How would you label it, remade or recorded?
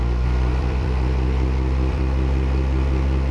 remade